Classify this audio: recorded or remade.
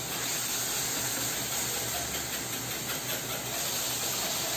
recorded